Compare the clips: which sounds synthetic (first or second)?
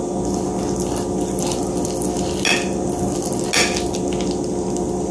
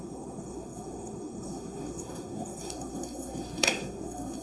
second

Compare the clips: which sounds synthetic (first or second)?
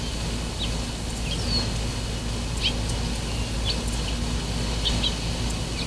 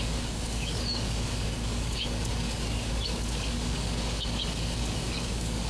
second